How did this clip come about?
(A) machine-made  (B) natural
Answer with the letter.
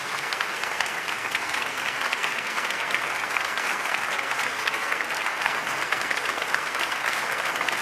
A